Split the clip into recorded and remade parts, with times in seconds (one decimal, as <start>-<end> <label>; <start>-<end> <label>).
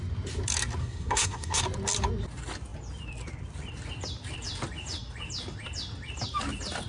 0.0-0.8 recorded; 0.8-1.6 remade; 1.6-6.9 recorded